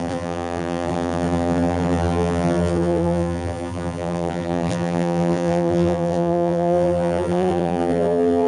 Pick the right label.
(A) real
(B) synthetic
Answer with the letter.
B